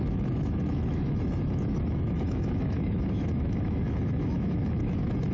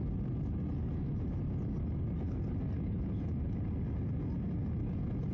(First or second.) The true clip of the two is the second